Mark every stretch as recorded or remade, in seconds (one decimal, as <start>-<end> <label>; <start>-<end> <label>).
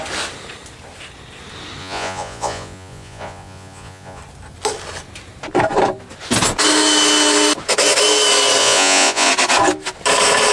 0.0-1.8 recorded; 1.8-4.2 remade; 4.2-8.6 recorded; 8.6-9.3 remade; 9.3-10.5 recorded